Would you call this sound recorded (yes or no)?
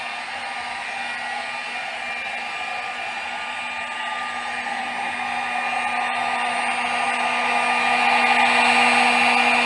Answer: yes